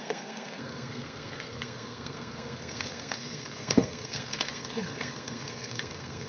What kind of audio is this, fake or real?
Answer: fake